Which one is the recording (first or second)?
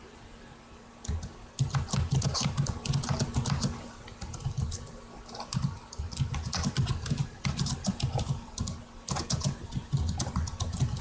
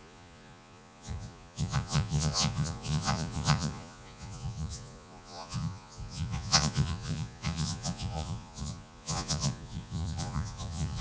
first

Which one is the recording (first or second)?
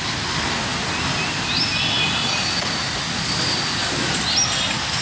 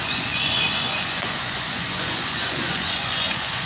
first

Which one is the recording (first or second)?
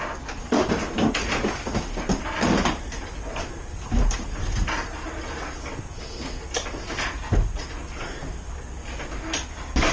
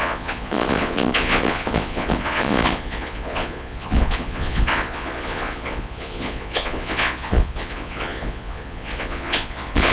first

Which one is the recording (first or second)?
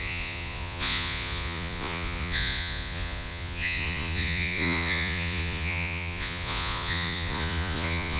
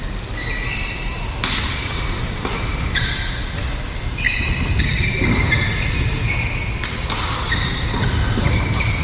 second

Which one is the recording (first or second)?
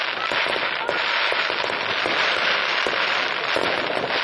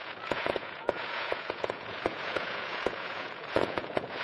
first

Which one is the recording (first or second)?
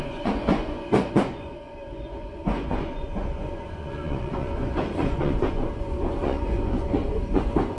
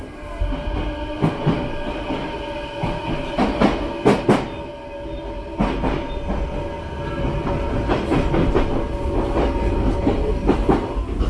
second